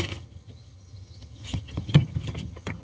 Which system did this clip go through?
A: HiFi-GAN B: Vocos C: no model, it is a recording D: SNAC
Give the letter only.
A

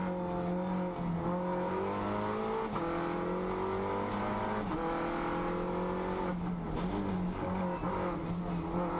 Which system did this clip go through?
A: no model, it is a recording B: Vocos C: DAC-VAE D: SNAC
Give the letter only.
A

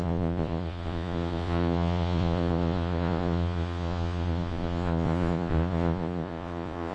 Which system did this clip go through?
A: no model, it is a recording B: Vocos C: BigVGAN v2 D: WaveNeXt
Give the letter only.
B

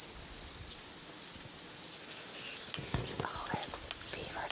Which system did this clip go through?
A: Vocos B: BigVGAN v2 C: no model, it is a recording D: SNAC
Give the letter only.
C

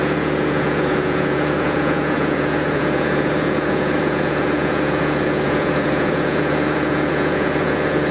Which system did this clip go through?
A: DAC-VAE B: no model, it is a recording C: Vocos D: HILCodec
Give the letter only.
C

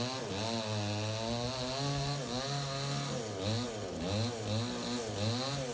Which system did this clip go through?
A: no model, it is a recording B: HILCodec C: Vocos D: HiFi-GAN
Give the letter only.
A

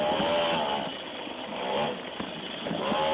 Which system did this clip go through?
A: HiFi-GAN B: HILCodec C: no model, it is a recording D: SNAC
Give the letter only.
C